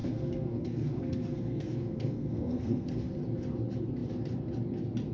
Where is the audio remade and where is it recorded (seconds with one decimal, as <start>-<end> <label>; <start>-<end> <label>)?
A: 0.0-3.1 remade; 3.1-5.1 recorded